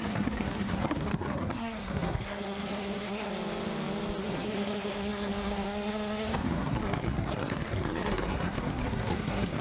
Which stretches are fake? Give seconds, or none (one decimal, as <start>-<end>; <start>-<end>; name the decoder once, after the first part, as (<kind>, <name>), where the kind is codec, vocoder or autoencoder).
0.0-3.3 (codec, SNAC); 4.2-9.6